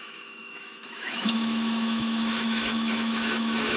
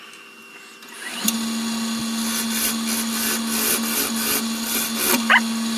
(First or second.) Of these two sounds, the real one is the second